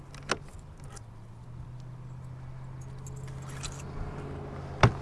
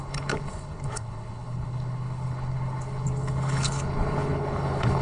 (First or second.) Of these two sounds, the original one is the first